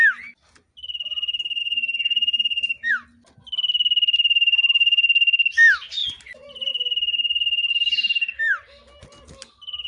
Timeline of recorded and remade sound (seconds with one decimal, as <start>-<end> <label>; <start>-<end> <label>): 0.0-1.6 recorded; 1.6-2.9 remade; 2.9-6.0 recorded; 6.0-6.7 remade; 6.7-9.9 recorded